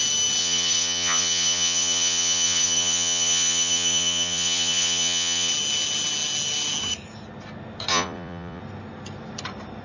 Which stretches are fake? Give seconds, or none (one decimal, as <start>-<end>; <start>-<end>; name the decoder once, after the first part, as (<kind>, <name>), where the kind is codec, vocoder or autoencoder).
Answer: 0.4-5.5 (vocoder, Vocos); 7.9-8.6